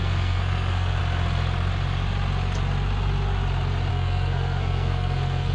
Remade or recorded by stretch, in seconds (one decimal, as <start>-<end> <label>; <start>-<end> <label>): 0.0-1.0 remade; 1.0-3.9 recorded; 3.9-5.5 remade